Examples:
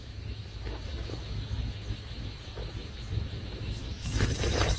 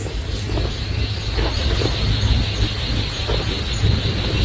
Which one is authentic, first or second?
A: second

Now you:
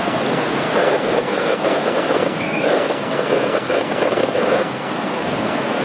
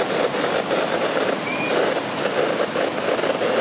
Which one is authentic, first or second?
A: second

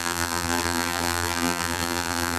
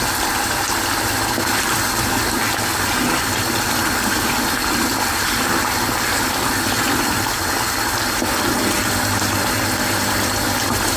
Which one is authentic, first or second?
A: second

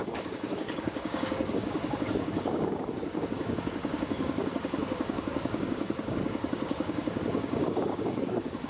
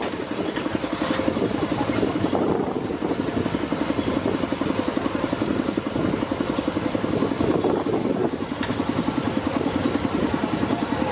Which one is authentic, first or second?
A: second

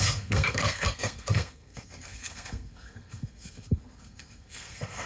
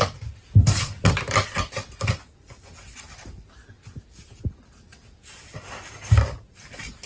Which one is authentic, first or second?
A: second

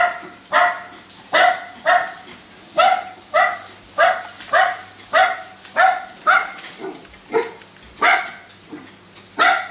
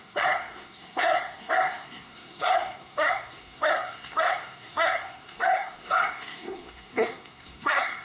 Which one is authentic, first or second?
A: first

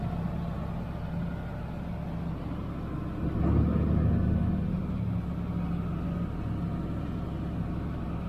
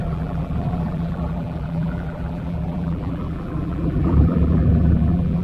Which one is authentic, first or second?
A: first